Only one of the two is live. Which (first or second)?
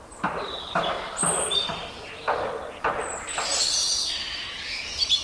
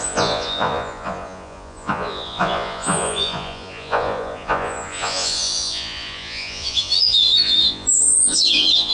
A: first